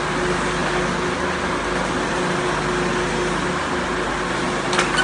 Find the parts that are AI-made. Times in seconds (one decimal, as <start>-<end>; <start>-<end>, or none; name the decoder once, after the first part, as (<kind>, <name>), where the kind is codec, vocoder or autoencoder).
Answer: none